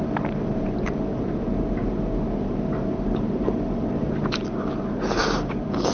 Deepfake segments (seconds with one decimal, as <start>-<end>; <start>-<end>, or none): 5.2-5.9